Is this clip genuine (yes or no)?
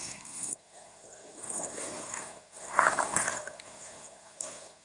no